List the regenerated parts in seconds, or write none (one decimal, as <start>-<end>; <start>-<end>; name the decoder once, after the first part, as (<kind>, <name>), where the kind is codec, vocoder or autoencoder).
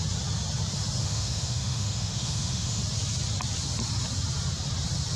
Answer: 1.0-2.8 (autoencoder, DAC-VAE)